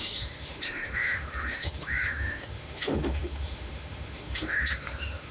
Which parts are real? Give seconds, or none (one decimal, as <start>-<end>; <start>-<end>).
none